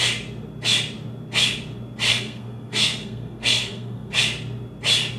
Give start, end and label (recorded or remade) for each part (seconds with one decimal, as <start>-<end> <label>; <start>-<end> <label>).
0.0-2.1 recorded; 2.1-4.2 remade; 4.2-5.2 recorded